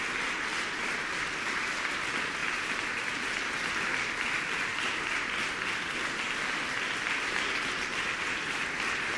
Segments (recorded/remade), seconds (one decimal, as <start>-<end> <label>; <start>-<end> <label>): 0.0-9.2 recorded